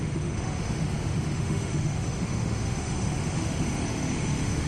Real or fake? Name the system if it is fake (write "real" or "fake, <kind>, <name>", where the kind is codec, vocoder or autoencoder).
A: fake, autoencoder, DAC-VAE